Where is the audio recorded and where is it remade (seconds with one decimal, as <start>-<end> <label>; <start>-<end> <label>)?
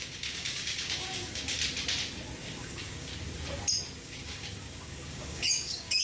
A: 0.0-1.6 remade; 1.6-2.4 recorded; 2.4-3.1 remade; 3.1-4.0 recorded; 4.0-6.0 remade